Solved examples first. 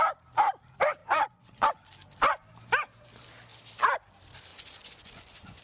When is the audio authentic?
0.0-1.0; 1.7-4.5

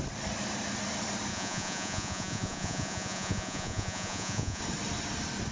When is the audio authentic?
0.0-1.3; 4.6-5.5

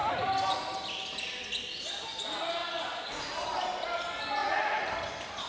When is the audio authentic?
0.0-2.6; 3.2-4.4; 4.9-5.5

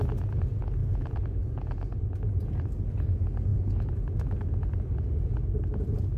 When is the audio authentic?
0.0-0.8; 2.6-6.2